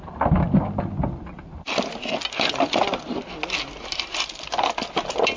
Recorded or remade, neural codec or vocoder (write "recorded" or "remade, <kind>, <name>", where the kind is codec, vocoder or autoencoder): recorded